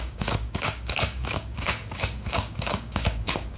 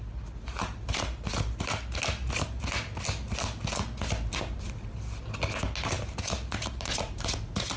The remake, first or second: first